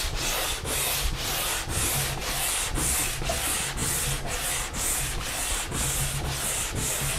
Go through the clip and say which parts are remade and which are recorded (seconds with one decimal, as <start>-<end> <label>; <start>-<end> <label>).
0.0-7.2 recorded